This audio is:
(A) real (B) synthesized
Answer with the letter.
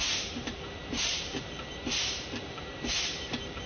B